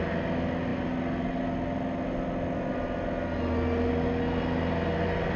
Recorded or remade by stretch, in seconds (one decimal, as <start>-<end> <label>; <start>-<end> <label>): 0.0-5.4 recorded